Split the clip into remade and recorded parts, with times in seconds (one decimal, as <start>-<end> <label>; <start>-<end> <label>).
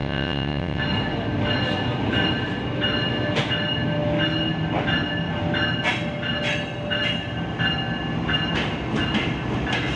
0.0-0.8 remade; 0.8-10.0 recorded